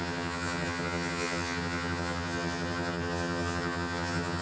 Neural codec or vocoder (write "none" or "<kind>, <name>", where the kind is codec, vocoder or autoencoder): vocoder, HiFi-GAN